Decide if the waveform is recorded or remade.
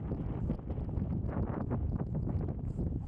recorded